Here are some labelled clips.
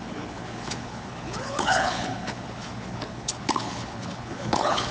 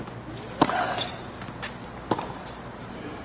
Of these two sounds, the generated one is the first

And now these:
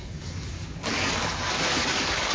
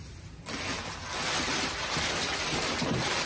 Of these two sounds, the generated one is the first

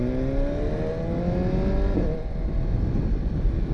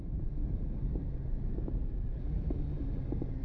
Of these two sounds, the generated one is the second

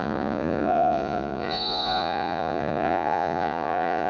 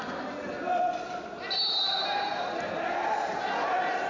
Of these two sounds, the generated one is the first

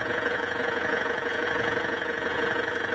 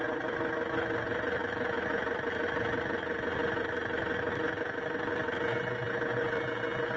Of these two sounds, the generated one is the first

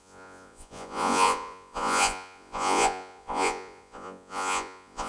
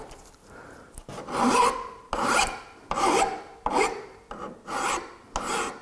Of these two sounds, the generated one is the first